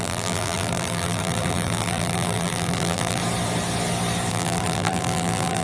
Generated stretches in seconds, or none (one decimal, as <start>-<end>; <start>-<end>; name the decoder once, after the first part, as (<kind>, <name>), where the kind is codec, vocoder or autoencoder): 0.0-3.2 (vocoder, BigVGAN v2); 4.3-5.6